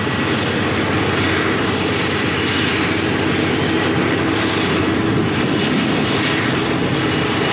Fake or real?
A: real